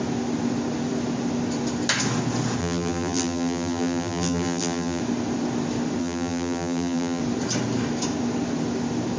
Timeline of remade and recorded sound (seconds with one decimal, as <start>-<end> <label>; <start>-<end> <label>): 0.0-2.6 recorded; 2.6-5.0 remade; 5.0-6.0 recorded; 6.0-7.2 remade; 7.2-9.2 recorded